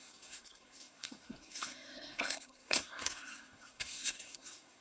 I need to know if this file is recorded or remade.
remade